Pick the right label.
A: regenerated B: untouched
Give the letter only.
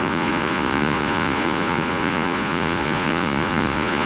A